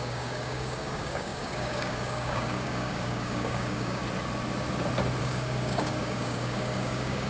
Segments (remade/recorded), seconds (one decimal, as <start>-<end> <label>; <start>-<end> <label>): 0.0-4.0 remade; 4.0-5.2 recorded; 5.2-7.3 remade